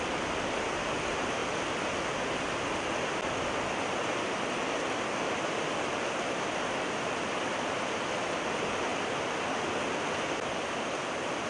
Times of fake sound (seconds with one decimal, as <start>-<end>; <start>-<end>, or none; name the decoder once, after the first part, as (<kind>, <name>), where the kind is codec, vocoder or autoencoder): none